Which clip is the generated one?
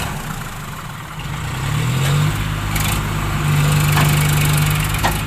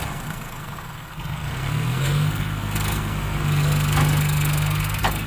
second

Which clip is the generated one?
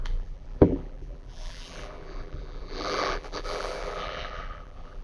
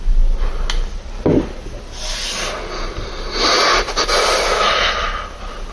first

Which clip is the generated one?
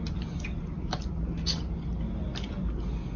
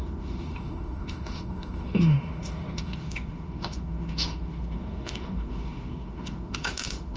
second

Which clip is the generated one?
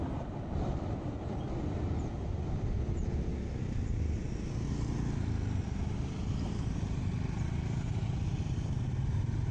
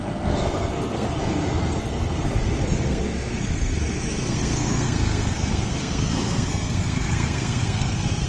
second